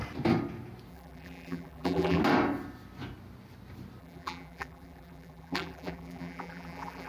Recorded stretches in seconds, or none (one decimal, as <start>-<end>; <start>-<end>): 0.0-0.9; 2.2-4.0